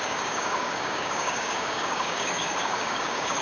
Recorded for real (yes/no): no